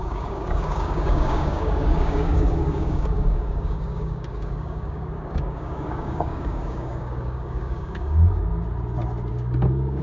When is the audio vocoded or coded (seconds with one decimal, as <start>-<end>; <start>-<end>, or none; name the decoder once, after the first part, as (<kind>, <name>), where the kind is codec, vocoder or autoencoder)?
0.0-8.5 (codec, DAC); 9.3-10.0